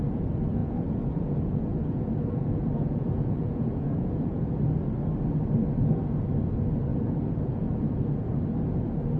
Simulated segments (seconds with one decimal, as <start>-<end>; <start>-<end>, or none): 0.6-4.6; 6.9-8.3